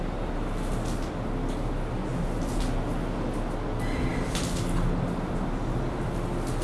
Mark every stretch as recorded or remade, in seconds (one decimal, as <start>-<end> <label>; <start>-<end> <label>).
0.0-4.1 recorded; 4.1-6.1 remade; 6.1-6.6 recorded